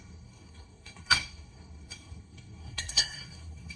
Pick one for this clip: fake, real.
fake